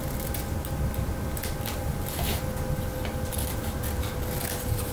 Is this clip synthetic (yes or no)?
no